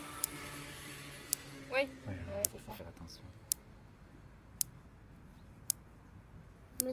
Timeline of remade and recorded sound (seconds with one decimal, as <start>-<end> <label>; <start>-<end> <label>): 0.0-2.2 recorded; 2.2-2.8 remade; 2.8-6.9 recorded